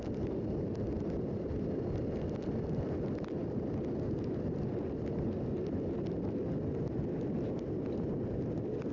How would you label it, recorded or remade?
recorded